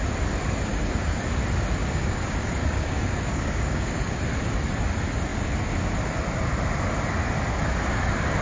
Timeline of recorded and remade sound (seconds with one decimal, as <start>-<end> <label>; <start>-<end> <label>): 0.0-0.7 recorded; 0.7-1.2 remade; 1.2-1.8 recorded; 1.8-4.1 remade; 4.1-8.4 recorded